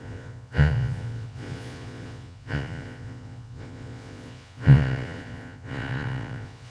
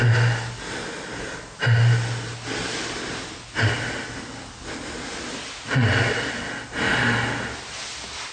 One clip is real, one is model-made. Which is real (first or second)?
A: second